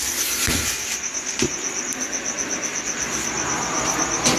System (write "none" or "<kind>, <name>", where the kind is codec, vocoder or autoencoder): none